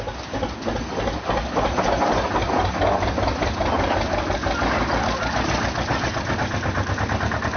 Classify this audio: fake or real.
real